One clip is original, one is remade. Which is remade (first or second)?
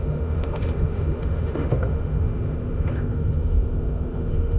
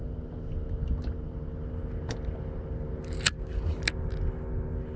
first